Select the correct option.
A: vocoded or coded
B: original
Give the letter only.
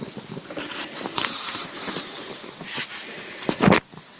B